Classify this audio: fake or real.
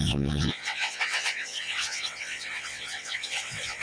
fake